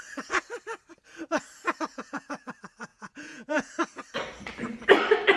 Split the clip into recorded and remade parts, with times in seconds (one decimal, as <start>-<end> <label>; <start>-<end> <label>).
0.0-1.9 recorded; 1.9-2.5 remade; 2.5-2.9 recorded; 2.9-3.7 remade; 3.7-5.4 recorded